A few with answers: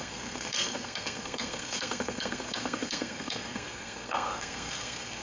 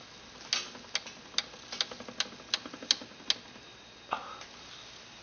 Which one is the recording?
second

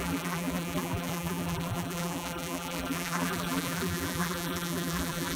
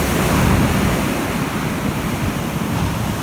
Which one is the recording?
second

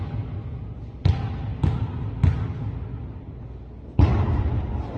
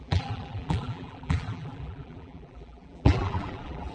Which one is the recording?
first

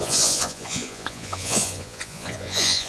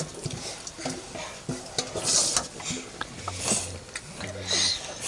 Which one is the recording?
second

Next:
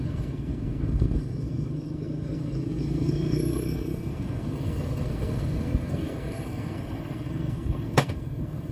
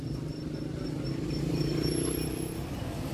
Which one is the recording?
second